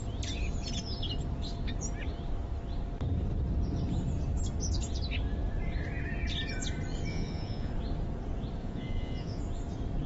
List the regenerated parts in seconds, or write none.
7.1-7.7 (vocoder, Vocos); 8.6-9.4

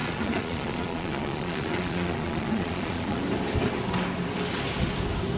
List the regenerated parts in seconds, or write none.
0.0-3.2 (vocoder, Vocos)

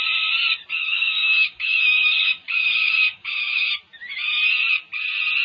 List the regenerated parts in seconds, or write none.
0.8-3.7 (codec, DAC)

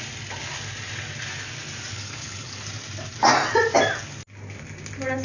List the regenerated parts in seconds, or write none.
1.9-2.6 (codec, HILCodec)

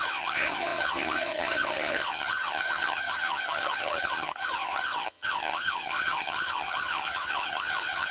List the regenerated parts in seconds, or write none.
0.0-8.1 (vocoder, HiFi-GAN)

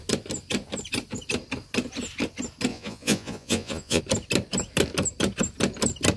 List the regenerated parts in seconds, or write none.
2.7-4.0 (vocoder, Vocos)